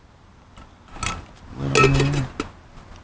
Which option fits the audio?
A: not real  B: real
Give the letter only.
B